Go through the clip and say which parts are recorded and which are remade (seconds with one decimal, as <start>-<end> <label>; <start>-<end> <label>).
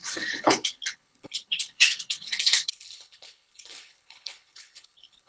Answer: 0.0-5.3 remade